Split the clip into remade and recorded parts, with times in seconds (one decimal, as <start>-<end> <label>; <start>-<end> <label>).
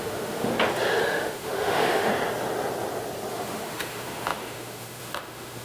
0.0-0.5 remade; 0.5-1.0 recorded; 1.0-2.1 remade; 2.1-3.3 recorded; 3.3-5.6 remade